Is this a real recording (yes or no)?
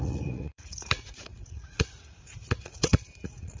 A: no